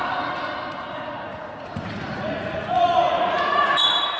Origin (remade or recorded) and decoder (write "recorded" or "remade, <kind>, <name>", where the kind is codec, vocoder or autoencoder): remade, vocoder, Vocos